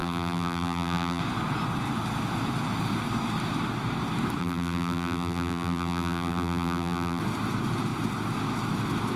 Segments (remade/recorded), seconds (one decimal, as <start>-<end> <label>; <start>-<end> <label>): 0.0-1.2 remade; 1.2-4.4 recorded; 4.4-7.2 remade; 7.2-9.2 recorded